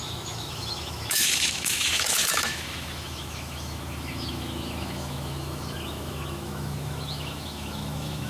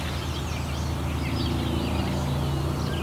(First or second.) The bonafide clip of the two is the second